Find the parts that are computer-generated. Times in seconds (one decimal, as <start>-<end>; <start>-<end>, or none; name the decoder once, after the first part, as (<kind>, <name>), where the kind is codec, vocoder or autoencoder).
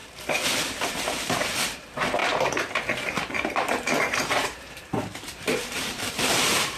0.9-6.8 (vocoder, BigVGAN v2)